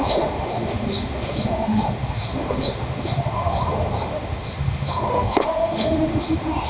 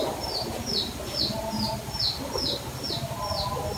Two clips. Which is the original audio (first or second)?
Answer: second